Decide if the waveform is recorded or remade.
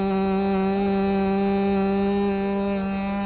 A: recorded